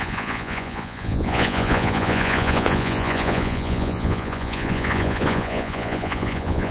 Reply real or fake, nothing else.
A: fake